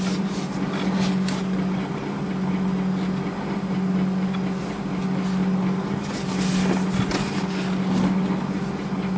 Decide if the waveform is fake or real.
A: real